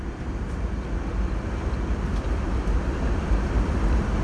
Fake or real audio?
fake